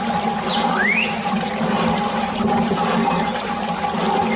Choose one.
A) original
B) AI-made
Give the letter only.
A